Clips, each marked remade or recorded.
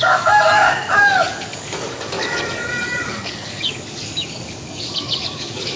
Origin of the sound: remade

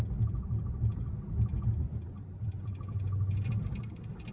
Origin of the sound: recorded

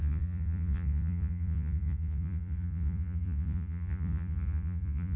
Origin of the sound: remade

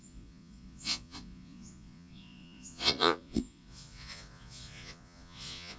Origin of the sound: remade